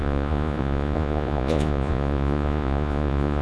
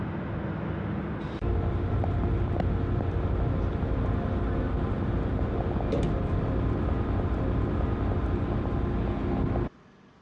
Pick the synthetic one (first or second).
first